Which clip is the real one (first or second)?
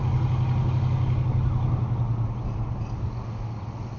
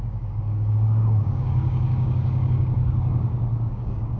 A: first